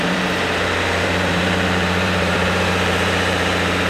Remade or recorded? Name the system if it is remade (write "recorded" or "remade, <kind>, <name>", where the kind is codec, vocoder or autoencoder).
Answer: remade, vocoder, BigVGAN v2